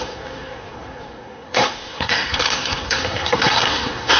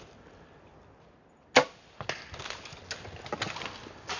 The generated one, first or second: first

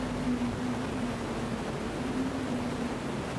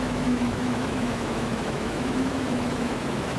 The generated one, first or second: second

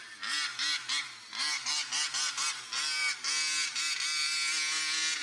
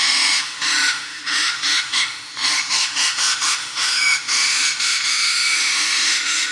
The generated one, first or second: second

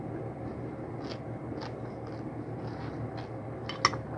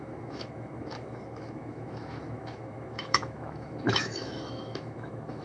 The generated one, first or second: second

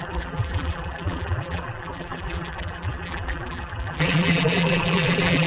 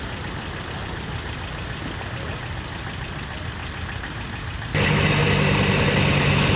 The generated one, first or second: first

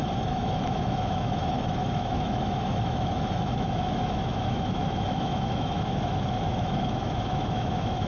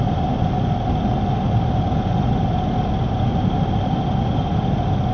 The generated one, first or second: first